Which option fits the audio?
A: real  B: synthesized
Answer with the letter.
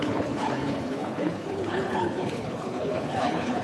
B